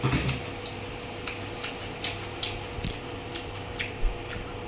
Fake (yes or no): no